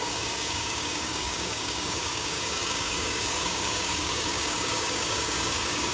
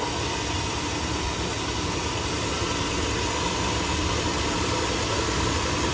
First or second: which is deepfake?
first